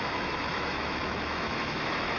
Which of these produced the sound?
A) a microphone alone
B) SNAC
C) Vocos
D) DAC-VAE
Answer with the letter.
D